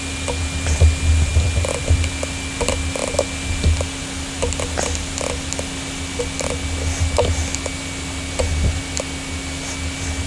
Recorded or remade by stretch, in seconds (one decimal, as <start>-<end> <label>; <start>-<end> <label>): 0.0-10.3 recorded